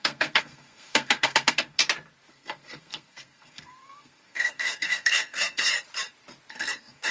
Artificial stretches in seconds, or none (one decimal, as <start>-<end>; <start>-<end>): 0.0-1.8; 2.3-5.7; 6.5-7.1